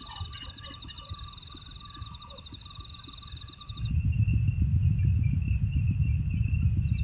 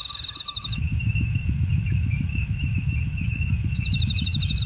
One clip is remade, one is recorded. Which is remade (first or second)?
second